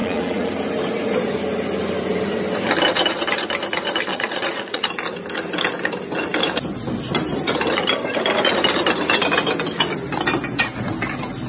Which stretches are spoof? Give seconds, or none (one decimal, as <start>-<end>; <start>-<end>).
0.0-0.5; 4.1-4.8